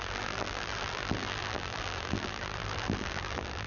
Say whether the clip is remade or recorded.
remade